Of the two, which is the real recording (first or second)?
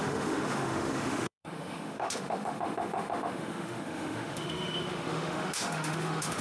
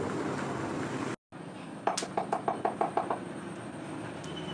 second